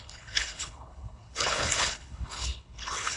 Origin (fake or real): fake